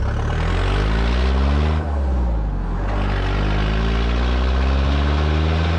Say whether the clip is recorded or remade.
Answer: recorded